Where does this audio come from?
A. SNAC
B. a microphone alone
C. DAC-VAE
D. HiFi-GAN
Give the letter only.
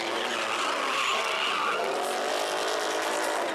B